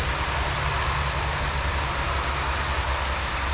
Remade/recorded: recorded